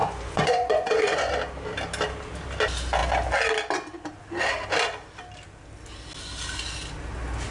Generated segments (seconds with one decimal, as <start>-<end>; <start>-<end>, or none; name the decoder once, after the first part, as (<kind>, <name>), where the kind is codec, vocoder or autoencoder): 0.0-1.3 (vocoder, Vocos)